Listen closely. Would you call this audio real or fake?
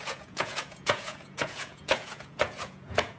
fake